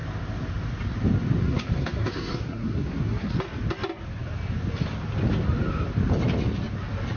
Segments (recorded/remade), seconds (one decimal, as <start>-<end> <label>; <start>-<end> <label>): 0.0-1.4 recorded; 1.4-3.3 remade; 3.3-7.2 recorded